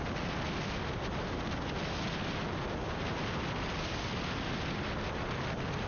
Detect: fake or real real